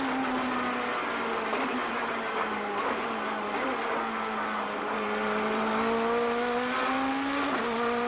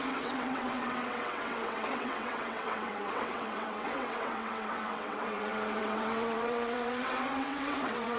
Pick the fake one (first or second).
second